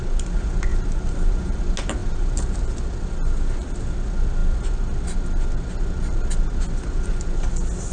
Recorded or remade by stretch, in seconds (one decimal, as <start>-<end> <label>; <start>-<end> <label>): 0.0-0.7 recorded; 0.7-1.6 remade; 1.6-2.0 recorded; 2.0-2.6 remade; 2.6-7.9 recorded